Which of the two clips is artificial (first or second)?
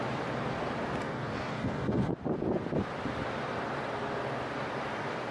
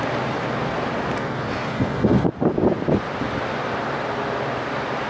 first